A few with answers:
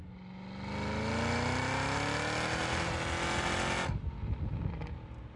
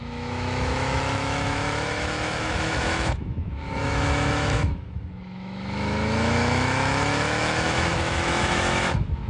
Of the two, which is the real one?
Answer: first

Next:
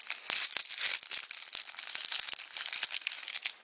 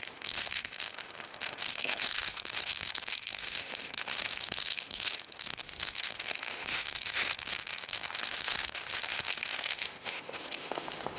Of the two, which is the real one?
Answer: first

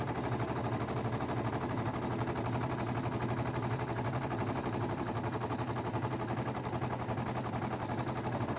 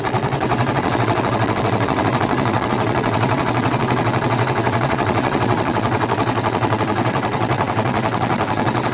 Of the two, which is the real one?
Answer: first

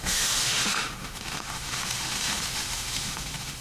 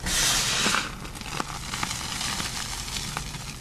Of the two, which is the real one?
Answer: second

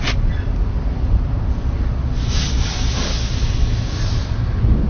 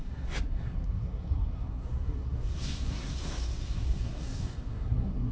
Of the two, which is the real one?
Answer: first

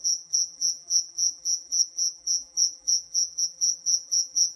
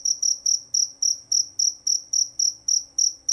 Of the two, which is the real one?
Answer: second